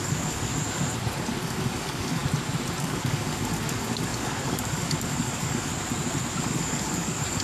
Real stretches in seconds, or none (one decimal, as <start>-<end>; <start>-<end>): 0.5-1.4; 2.2-2.8; 5.7-6.4